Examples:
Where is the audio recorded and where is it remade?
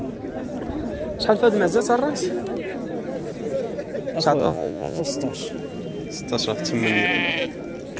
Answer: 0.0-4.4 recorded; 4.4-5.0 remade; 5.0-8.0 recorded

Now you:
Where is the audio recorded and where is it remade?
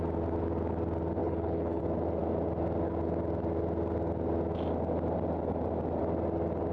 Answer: 0.0-1.2 recorded; 1.2-1.8 remade; 1.8-6.7 recorded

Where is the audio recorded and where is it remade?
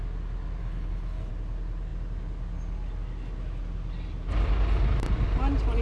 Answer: 0.0-0.6 recorded; 0.6-1.3 remade; 1.3-5.8 recorded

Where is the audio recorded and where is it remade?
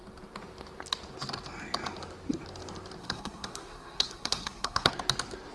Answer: 0.0-3.0 recorded; 3.0-4.9 remade; 4.9-5.5 recorded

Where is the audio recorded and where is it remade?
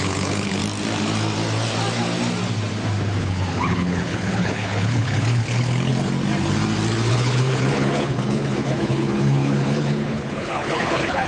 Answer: 0.0-0.6 remade; 0.6-3.2 recorded; 3.2-5.9 remade; 5.9-7.1 recorded; 7.1-11.3 remade